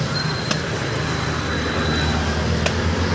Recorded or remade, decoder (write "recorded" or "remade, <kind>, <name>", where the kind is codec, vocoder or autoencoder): recorded